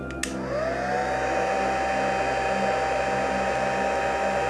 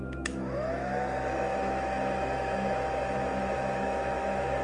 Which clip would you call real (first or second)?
first